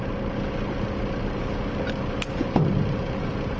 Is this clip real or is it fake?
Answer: real